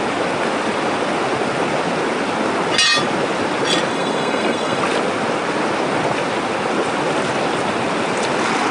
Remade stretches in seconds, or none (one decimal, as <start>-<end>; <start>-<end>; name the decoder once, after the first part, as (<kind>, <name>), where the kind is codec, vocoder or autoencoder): 3.9-4.8 (codec, SNAC)

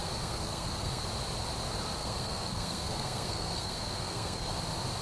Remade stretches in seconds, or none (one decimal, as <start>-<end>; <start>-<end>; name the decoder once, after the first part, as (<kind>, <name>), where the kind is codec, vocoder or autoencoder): 0.0-1.0 (codec, SNAC); 2.0-4.5

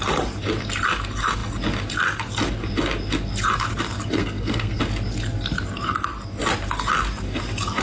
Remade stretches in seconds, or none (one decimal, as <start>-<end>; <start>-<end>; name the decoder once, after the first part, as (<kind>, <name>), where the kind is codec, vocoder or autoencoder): 4.2-4.8 (codec, SNAC)

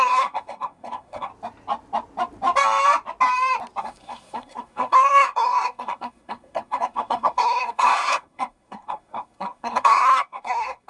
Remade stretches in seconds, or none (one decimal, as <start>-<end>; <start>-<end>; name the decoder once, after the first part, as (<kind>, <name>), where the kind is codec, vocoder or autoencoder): 0.0-1.3 (codec, SNAC); 3.8-10.9

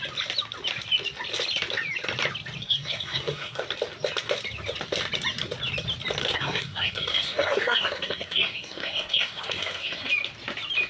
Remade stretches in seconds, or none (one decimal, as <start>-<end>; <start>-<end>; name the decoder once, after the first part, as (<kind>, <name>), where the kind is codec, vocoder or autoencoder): 2.6-3.6 (codec, SNAC); 6.2-10.1

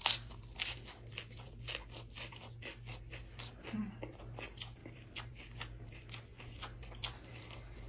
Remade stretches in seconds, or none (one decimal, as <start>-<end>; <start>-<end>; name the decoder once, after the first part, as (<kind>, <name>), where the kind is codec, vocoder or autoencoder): none

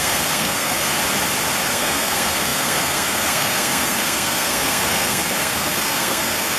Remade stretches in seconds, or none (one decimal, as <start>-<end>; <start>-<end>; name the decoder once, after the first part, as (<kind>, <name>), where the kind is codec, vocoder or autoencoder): 0.0-1.0 (codec, SNAC); 1.6-6.6

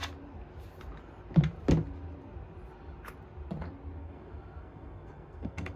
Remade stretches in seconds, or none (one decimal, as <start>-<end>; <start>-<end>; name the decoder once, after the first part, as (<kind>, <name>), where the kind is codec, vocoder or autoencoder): 4.0-5.8 (codec, SNAC)